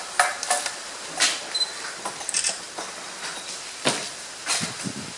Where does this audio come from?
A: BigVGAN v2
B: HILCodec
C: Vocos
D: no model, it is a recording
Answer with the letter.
D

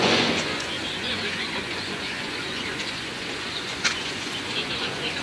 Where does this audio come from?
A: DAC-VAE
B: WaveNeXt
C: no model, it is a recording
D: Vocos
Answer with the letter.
D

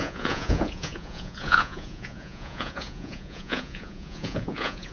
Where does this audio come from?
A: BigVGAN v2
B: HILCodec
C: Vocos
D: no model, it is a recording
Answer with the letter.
C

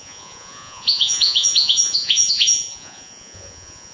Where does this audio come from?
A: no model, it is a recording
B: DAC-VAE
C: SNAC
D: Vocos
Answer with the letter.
D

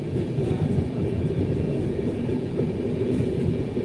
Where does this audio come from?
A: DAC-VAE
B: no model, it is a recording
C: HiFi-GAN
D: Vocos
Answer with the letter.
D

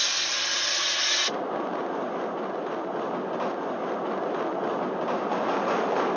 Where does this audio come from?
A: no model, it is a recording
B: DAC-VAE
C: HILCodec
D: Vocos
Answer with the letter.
A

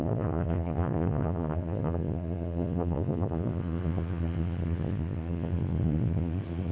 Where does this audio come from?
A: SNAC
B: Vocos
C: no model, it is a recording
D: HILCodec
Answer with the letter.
B